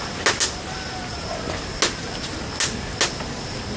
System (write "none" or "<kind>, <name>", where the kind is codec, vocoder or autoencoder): none